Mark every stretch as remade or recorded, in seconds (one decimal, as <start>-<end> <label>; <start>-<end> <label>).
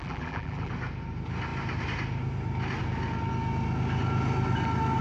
0.0-0.7 remade; 0.7-5.0 recorded